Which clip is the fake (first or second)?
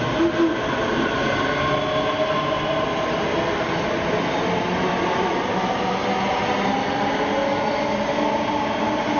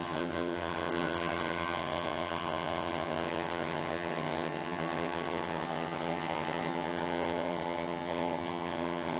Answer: second